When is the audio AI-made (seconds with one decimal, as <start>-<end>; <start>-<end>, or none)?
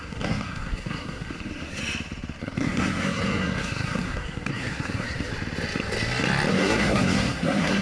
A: 0.0-1.8; 2.4-5.3; 6.5-7.8